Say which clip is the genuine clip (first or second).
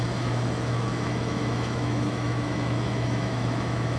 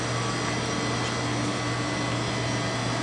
second